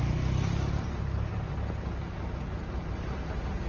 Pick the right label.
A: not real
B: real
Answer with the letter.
B